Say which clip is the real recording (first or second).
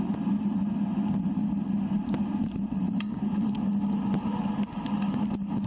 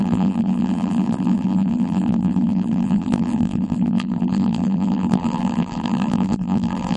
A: first